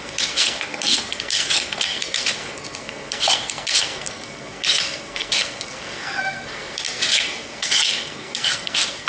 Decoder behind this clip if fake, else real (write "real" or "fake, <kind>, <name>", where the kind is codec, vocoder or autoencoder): fake, codec, SNAC